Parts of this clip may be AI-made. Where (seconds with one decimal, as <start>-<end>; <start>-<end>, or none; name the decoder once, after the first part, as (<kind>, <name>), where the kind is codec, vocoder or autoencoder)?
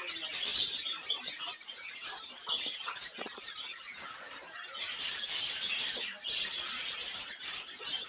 0.5-1.4 (vocoder, BigVGAN v2)